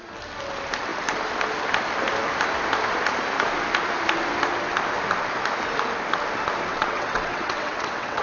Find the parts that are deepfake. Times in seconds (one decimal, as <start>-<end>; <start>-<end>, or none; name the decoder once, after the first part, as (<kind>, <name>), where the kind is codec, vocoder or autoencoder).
6.7-8.2 (vocoder, WaveNeXt)